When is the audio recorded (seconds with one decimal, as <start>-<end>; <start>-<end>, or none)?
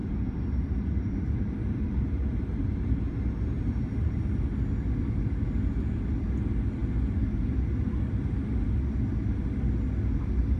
4.3-10.6